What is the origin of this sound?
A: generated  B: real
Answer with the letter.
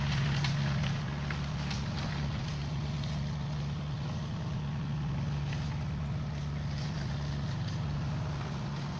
B